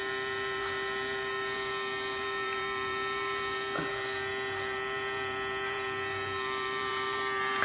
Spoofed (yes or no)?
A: yes